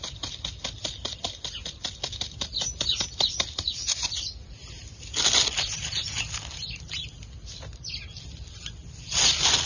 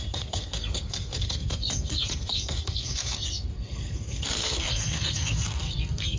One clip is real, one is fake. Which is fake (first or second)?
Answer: second